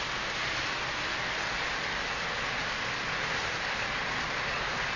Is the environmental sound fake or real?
real